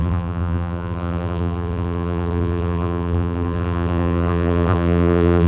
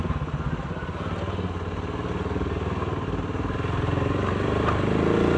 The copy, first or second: first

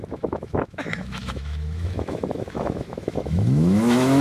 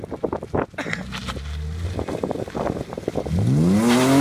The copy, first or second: first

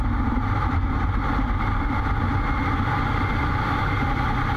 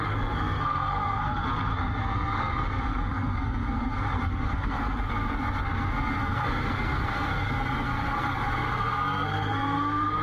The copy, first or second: second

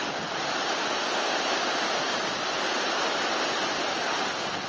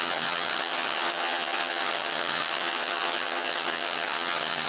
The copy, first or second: second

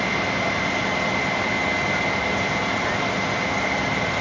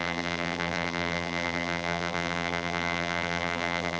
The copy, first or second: second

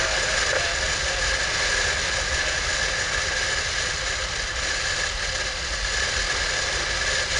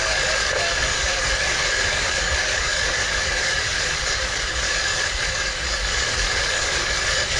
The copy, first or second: second